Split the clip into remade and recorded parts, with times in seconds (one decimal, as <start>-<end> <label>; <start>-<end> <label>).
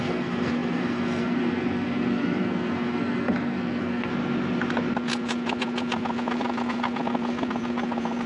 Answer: 0.0-4.1 remade; 4.1-8.3 recorded